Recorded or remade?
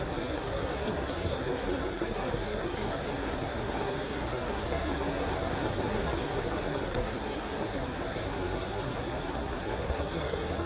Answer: remade